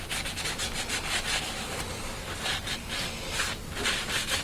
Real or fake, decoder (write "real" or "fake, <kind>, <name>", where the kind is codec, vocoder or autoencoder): real